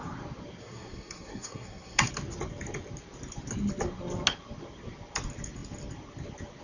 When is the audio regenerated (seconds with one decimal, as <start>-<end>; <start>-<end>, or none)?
0.6-2.1